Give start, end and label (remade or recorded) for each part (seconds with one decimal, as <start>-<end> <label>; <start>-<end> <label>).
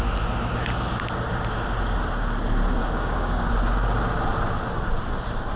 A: 0.0-2.8 recorded; 2.8-3.5 remade; 3.5-5.6 recorded